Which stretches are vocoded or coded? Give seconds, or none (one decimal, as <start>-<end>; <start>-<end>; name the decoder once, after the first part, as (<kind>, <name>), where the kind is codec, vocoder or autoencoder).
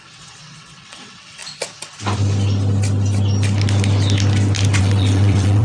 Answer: 0.0-1.4 (vocoder, WaveNeXt); 4.8-5.6